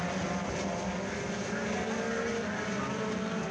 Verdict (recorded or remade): recorded